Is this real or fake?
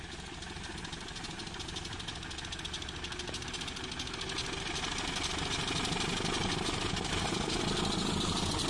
real